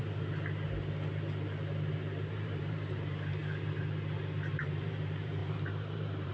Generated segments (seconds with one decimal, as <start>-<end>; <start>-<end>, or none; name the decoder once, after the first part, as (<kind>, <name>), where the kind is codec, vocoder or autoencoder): 2.3-3.4 (vocoder, BigVGAN v2); 4.6-6.3